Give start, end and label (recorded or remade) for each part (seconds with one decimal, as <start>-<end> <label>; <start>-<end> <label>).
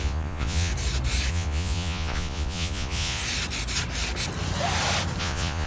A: 0.0-0.7 remade; 0.7-1.3 recorded; 1.3-3.2 remade; 3.2-5.2 recorded; 5.2-5.7 remade